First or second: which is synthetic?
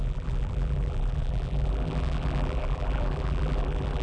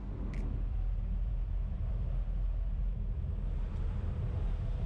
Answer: first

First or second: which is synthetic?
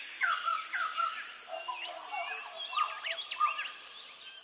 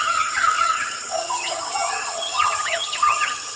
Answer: second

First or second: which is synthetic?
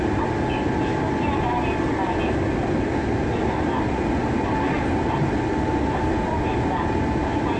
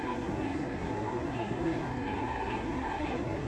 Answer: second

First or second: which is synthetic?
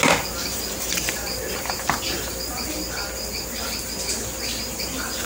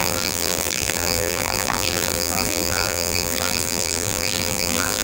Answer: second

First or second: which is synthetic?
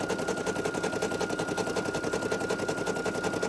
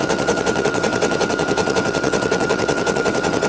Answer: second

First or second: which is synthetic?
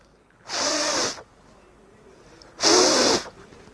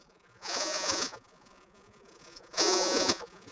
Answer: second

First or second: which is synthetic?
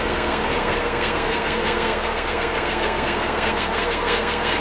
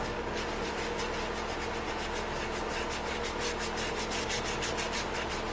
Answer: first